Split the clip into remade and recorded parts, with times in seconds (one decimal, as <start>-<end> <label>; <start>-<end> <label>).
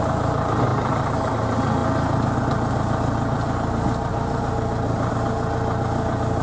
0.0-0.7 recorded; 0.7-1.3 remade; 1.3-4.1 recorded; 4.1-5.1 remade; 5.1-6.4 recorded